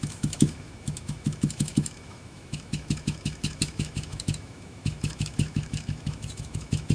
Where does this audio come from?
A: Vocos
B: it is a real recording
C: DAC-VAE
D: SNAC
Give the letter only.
C